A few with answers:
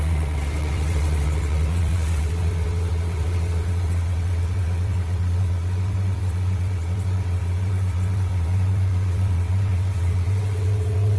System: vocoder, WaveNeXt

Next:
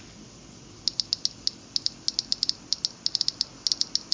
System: none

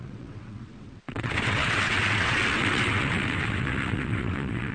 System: vocoder, WaveNeXt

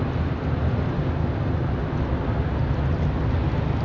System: none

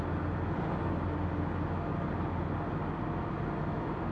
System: none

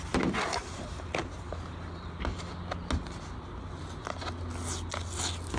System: none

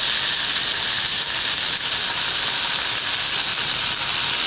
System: none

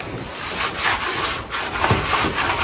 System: none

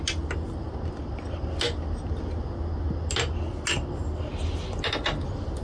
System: none